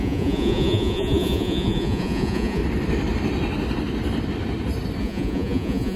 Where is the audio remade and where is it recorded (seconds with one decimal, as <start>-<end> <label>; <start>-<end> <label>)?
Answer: 0.0-2.6 remade; 2.6-5.0 recorded; 5.0-6.0 remade